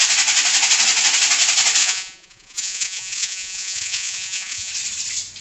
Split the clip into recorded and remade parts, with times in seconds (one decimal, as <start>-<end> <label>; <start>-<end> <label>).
0.0-1.8 recorded; 1.8-4.7 remade; 4.7-5.4 recorded